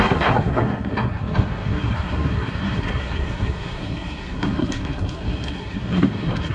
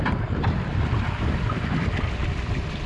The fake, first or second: first